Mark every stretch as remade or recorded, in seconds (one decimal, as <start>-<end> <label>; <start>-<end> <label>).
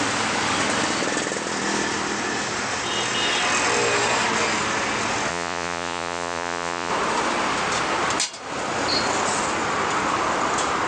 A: 0.0-5.3 recorded; 5.3-6.9 remade; 6.9-10.9 recorded